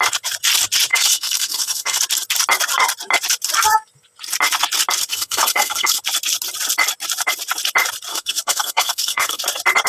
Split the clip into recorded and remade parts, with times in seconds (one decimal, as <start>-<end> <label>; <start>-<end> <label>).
0.0-0.9 recorded; 0.9-2.0 remade; 2.0-5.1 recorded; 5.1-6.0 remade; 6.0-8.1 recorded; 8.1-9.4 remade; 9.4-9.9 recorded

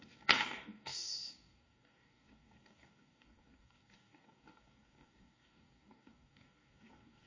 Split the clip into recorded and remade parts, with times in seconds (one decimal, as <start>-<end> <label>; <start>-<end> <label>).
0.0-7.3 remade

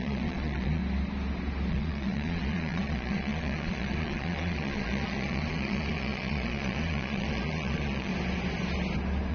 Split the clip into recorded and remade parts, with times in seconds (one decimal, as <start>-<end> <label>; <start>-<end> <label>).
0.0-0.8 remade; 0.8-1.7 recorded; 1.7-8.1 remade; 8.1-9.3 recorded

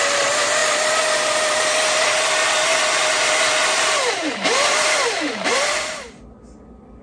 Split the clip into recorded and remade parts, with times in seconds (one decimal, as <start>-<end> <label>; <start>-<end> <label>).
0.0-3.6 recorded; 3.6-6.3 remade; 6.3-7.0 recorded